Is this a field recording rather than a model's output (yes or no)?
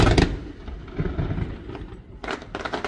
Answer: yes